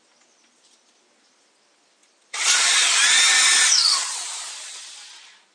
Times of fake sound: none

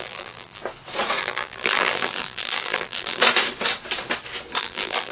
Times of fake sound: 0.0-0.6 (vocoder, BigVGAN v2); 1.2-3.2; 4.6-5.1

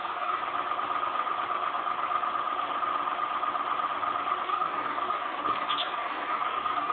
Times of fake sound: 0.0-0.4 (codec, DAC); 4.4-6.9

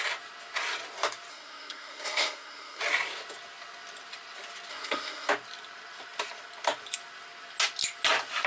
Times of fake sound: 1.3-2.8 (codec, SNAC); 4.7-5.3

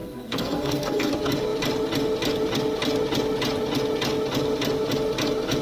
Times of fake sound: 0.0-1.1 (codec, SNAC)